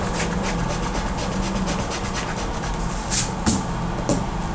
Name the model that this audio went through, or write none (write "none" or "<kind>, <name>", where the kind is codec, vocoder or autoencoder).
none